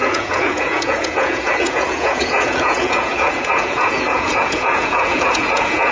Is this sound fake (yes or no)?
yes